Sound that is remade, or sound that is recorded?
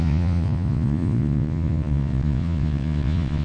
remade